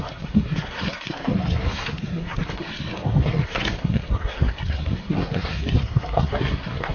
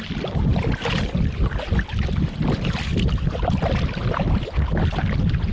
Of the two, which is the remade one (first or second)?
first